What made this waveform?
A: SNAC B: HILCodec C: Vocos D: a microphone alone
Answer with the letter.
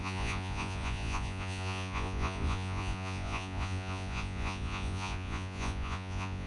C